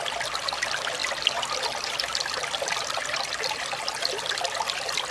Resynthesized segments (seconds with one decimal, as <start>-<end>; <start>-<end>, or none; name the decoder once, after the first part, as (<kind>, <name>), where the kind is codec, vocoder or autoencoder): none